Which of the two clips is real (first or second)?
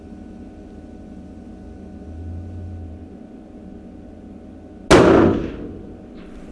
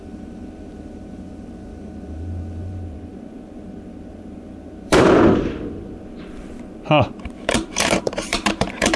first